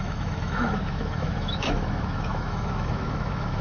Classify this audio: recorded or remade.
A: remade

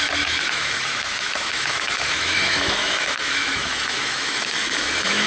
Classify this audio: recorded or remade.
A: remade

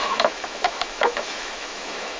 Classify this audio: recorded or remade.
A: remade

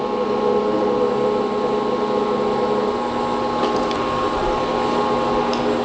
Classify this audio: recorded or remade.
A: recorded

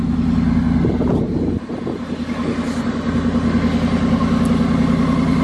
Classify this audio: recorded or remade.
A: recorded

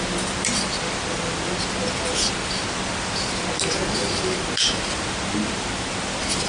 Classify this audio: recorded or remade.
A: recorded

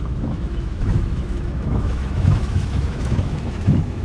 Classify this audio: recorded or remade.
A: remade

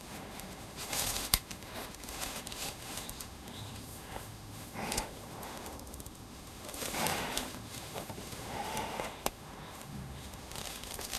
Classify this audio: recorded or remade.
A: remade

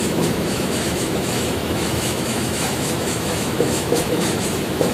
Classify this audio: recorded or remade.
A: remade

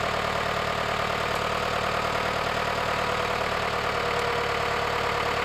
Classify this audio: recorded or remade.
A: recorded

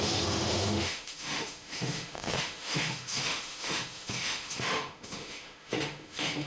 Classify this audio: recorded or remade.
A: remade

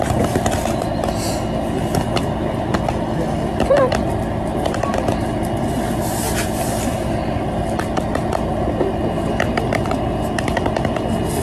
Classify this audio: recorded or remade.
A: recorded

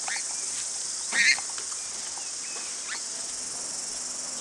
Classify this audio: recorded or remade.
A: recorded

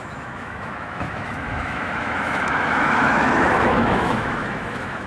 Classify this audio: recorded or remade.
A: remade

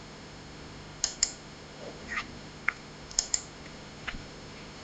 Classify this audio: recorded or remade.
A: remade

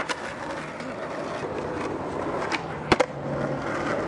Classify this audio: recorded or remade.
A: recorded